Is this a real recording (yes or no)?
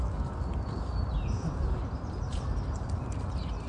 yes